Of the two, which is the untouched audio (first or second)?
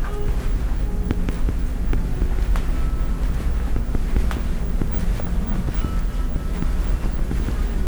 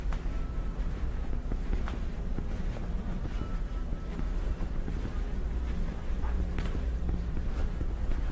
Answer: first